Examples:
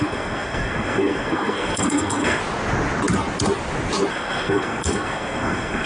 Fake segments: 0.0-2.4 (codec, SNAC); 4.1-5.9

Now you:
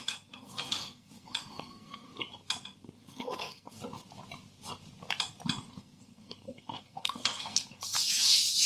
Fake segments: 0.0-2.1 (codec, SNAC); 3.1-3.8; 5.7-8.7

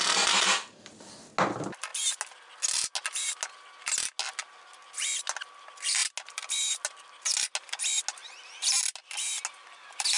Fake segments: none

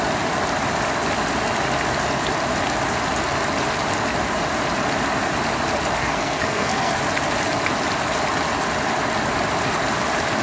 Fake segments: 6.0-7.0 (codec, SNAC)